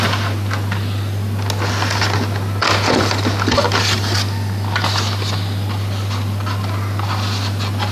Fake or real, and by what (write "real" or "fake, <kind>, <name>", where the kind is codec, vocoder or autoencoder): real